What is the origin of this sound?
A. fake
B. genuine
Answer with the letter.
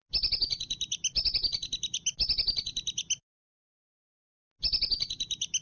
B